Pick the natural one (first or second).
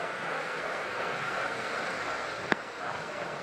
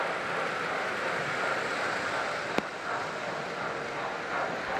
second